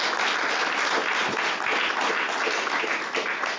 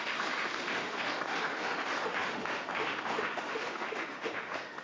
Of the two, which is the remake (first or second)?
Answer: second